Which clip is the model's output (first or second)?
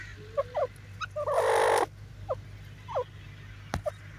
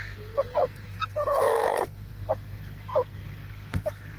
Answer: second